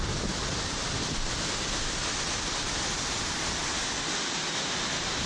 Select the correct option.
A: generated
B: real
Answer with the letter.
B